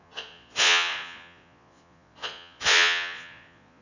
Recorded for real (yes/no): no